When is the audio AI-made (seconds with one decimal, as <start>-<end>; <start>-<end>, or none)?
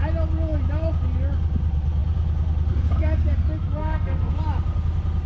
3.8-4.3